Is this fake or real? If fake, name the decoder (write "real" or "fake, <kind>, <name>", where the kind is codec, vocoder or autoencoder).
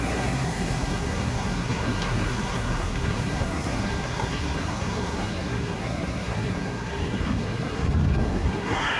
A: fake, codec, SNAC